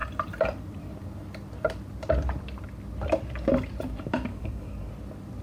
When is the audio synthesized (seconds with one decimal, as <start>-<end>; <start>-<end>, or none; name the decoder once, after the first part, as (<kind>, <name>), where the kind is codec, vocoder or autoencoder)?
4.3-4.9 (codec, DAC)